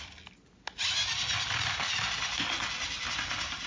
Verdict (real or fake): real